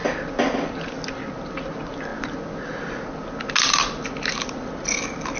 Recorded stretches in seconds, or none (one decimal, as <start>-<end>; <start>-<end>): 0.0-5.4